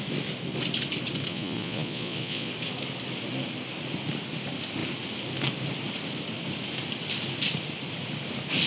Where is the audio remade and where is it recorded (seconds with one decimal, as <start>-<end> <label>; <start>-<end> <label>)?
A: 0.0-1.3 recorded; 1.3-2.5 remade; 2.5-8.7 recorded